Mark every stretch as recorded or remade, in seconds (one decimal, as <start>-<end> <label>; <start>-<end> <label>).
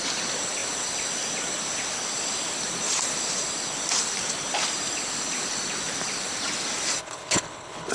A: 0.0-7.0 recorded; 7.0-7.9 remade